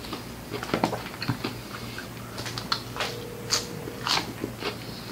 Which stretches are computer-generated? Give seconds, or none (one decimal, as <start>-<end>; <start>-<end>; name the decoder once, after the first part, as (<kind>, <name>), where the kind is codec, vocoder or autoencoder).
none